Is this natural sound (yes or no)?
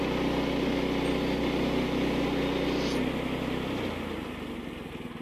yes